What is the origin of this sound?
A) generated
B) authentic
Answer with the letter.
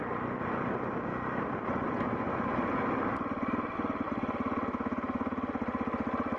B